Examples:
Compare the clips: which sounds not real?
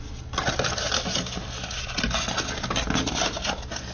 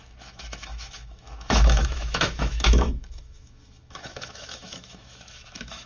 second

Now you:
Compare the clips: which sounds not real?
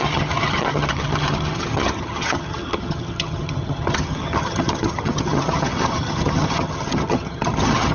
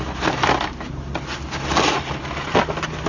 first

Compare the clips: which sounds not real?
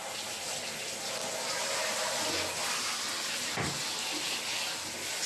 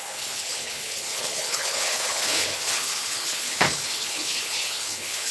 second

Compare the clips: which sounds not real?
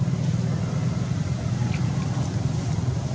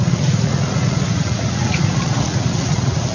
second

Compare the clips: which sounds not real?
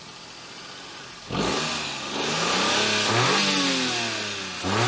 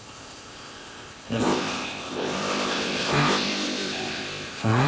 second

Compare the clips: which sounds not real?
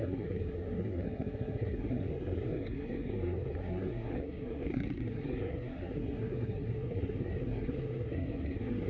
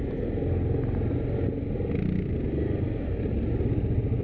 first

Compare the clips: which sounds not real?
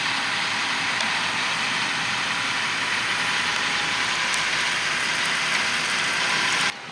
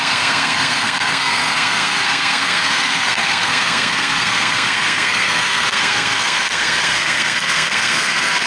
second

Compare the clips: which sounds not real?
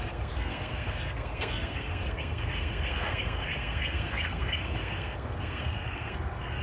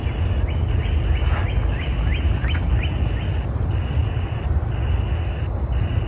first